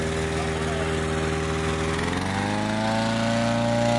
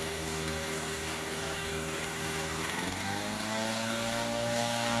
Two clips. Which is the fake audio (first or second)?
second